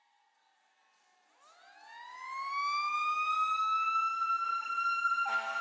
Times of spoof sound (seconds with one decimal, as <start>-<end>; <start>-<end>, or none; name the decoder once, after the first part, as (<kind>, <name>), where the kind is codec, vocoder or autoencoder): 3.0-5.1 (codec, SNAC)